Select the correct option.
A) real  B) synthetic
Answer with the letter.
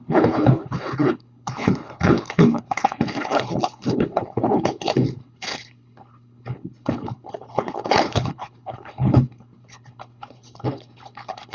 B